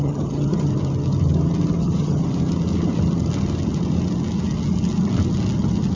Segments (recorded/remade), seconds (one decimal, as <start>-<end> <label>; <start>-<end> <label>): 0.0-0.7 remade; 0.7-1.8 recorded; 1.8-2.2 remade; 2.2-6.0 recorded

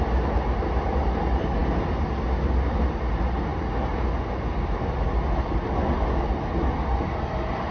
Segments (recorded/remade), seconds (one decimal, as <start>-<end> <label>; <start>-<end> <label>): 0.0-7.7 recorded

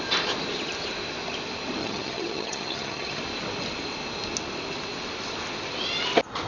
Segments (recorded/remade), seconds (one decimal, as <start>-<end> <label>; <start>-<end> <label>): 0.0-1.8 recorded; 1.8-3.2 remade; 3.2-6.5 recorded

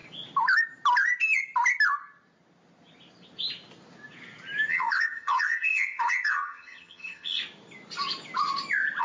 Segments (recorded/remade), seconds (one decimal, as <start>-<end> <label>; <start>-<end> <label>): 0.0-4.7 recorded; 4.7-7.4 remade; 7.4-9.0 recorded

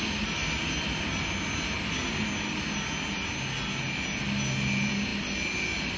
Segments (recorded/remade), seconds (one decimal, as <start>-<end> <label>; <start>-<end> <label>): 0.0-6.0 recorded

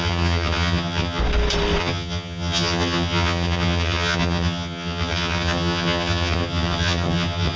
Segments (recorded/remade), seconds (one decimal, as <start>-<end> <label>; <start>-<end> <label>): 0.0-1.2 remade; 1.2-1.8 recorded; 1.8-7.6 remade

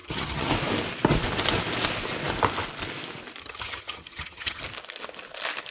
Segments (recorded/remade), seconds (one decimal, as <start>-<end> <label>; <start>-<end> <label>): 0.0-0.5 remade; 0.5-3.4 recorded; 3.4-4.6 remade; 4.6-5.7 recorded